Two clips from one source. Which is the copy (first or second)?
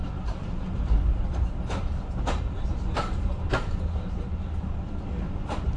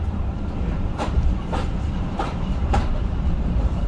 second